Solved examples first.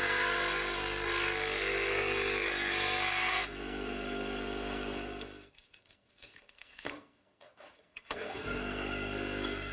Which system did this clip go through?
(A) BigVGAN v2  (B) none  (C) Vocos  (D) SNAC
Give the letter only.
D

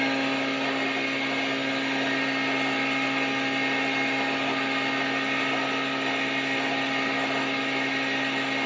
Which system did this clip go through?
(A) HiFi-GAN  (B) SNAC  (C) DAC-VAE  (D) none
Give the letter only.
D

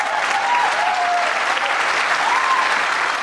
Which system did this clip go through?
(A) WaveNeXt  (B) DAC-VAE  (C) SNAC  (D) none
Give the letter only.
D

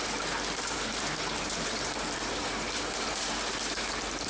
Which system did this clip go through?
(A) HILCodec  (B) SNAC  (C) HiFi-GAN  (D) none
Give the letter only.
D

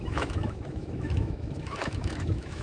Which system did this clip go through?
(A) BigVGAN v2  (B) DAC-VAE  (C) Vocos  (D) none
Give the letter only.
B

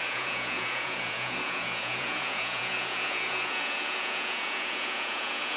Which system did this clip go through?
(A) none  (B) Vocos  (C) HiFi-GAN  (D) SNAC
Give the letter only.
B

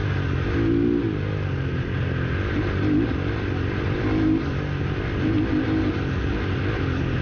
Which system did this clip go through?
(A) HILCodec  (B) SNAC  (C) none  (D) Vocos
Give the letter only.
C